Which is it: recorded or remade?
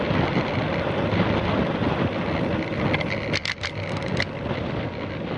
recorded